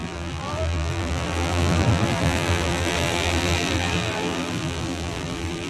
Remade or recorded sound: remade